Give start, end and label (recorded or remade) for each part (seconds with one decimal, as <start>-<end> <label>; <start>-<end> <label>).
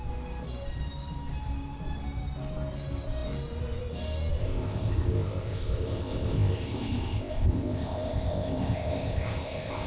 0.0-4.4 recorded; 4.4-9.9 remade